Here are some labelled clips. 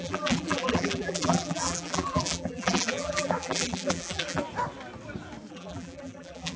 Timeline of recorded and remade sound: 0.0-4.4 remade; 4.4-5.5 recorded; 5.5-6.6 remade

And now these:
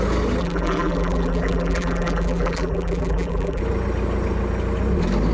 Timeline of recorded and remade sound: 0.0-0.4 recorded; 0.4-3.6 remade; 3.6-5.3 recorded

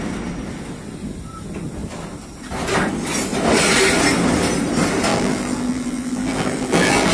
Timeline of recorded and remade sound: 0.0-5.1 recorded; 5.1-7.1 remade

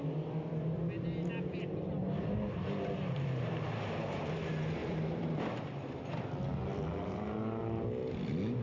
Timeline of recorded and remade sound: 0.0-2.0 recorded; 2.0-4.2 remade; 4.2-4.8 recorded; 4.8-6.0 remade; 6.0-8.6 recorded

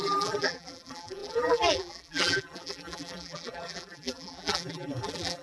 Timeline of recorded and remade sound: 0.0-5.4 remade